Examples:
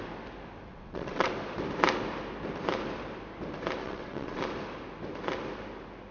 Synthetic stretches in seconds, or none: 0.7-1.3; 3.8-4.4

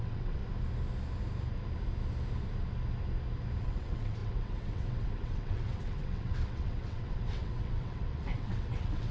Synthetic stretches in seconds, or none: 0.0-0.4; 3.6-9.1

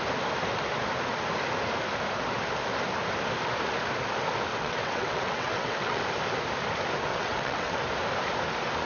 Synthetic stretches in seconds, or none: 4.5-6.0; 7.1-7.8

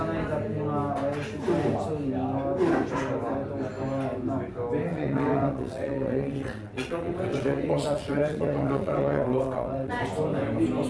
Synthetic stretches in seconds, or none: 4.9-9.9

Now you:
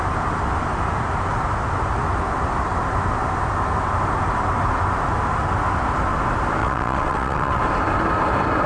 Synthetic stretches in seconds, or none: 6.6-7.6

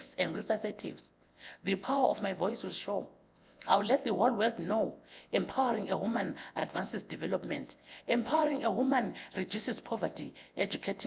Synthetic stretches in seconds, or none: 0.0-11.1

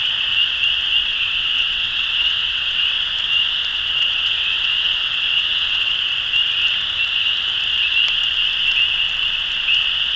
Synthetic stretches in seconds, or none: 1.1-2.9; 3.7-5.9

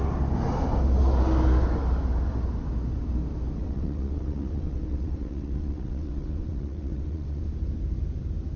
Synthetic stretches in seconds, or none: 3.6-7.4